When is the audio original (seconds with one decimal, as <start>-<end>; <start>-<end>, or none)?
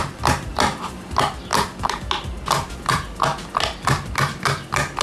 0.0-5.0